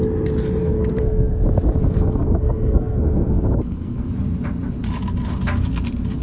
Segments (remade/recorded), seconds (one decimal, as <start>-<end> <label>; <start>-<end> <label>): 0.0-0.6 recorded; 0.6-1.3 remade; 1.3-1.8 recorded; 1.8-4.1 remade; 4.1-6.2 recorded